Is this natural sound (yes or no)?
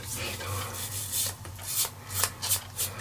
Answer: yes